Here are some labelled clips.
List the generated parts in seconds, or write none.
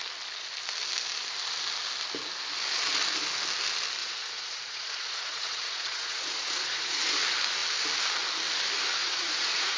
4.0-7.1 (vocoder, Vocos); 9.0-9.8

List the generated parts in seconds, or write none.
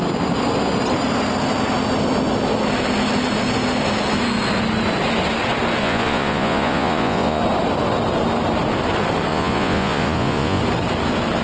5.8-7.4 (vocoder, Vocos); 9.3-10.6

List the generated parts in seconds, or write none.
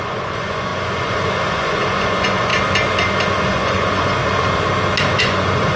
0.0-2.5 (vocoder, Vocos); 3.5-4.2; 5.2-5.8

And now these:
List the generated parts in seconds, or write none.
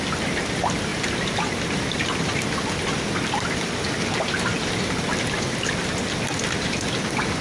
none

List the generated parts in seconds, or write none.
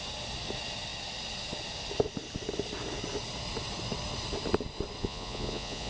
5.0-5.9 (vocoder, Vocos)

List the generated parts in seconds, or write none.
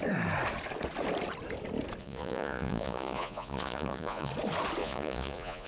2.0-4.3 (vocoder, Vocos); 4.8-5.7